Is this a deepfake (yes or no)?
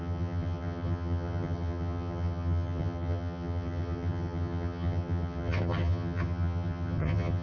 yes